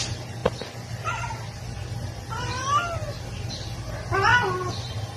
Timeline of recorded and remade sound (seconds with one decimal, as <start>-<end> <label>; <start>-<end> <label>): 0.0-5.2 recorded